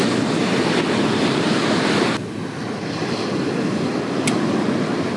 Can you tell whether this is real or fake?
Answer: real